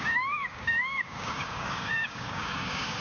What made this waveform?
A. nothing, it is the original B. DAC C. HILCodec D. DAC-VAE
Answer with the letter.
B